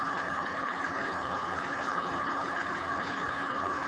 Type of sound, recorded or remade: remade